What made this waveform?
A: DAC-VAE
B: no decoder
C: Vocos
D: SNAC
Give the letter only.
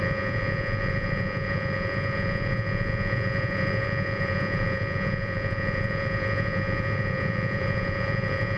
C